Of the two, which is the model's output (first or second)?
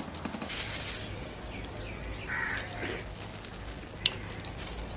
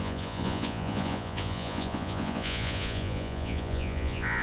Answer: second